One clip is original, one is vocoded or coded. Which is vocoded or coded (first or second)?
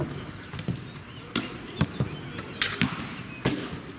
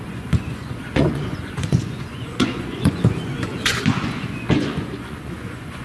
second